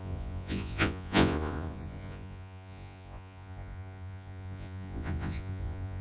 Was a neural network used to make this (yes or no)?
yes